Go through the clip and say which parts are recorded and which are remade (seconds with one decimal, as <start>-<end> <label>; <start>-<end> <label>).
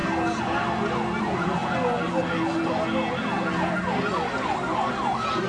0.0-5.5 recorded